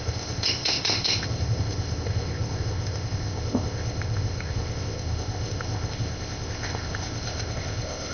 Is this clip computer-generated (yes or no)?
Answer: yes